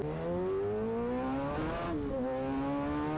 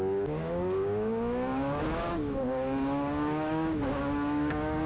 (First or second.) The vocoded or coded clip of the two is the second